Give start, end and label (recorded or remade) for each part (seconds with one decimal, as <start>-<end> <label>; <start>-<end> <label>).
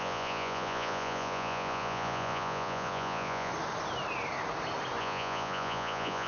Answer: 0.0-3.5 remade; 3.5-5.0 recorded; 5.0-6.3 remade